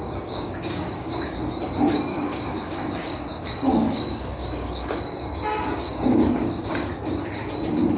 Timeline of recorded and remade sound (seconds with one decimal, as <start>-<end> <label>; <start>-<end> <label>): 0.0-1.5 remade; 1.5-2.1 recorded; 2.1-6.9 remade; 6.9-8.0 recorded